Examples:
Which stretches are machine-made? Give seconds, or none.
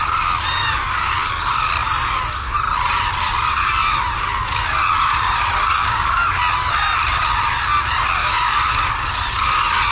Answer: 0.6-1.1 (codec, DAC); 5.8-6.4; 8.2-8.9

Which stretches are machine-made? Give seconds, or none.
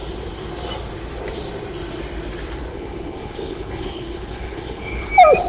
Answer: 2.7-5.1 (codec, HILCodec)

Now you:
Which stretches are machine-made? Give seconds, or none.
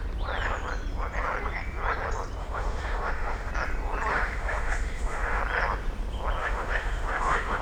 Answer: 2.4-3.5 (autoencoder, DAC-VAE); 4.1-5.4; 6.4-7.6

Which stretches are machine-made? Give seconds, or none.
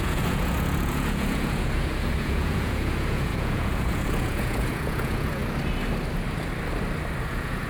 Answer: 0.0-5.4 (vocoder, Vocos); 7.2-7.7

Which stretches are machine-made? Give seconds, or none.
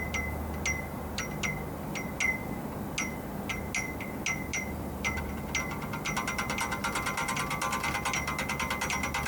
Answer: 4.5-5.2 (vocoder, BigVGAN v2)